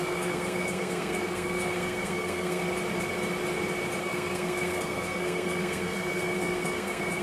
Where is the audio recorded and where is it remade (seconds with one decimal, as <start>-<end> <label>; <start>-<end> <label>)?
0.0-2.6 remade; 2.6-4.0 recorded; 4.0-7.2 remade